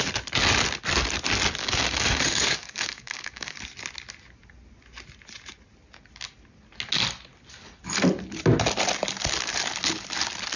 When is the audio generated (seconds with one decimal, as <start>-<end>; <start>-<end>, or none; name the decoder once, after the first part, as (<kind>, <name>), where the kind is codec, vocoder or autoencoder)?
1.6-3.6 (codec, DAC)